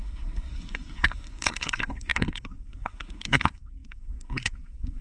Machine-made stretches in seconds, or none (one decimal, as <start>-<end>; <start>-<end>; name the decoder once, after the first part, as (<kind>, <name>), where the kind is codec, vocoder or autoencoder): 0.0-5.0 (codec, SNAC)